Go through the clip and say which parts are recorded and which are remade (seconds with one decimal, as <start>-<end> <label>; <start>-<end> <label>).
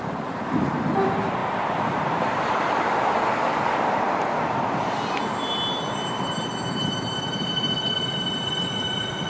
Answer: 0.0-1.4 remade; 1.4-2.0 recorded; 2.0-9.3 remade